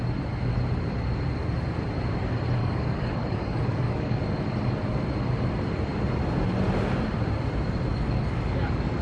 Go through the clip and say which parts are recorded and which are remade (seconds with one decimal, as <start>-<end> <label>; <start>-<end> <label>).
0.0-2.6 recorded; 2.6-4.2 remade; 4.2-7.9 recorded; 7.9-9.0 remade